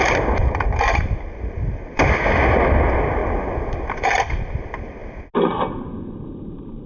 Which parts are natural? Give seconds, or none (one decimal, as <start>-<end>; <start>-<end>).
0.0-6.9